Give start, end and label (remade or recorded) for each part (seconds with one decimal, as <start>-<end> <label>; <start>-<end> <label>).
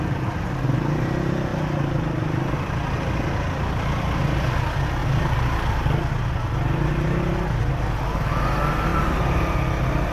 0.0-10.1 recorded